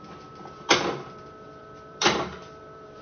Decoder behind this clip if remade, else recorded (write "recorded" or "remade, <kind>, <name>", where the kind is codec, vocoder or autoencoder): remade, vocoder, BigVGAN v2